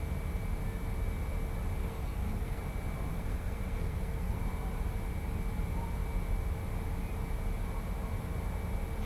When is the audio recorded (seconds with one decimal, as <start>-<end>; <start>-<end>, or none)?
0.0-1.8; 2.6-3.1; 4.4-9.1